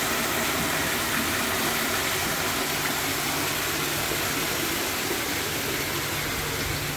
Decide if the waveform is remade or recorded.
recorded